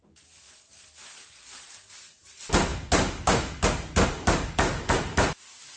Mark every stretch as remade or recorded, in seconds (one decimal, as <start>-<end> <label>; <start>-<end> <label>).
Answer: 0.0-5.8 recorded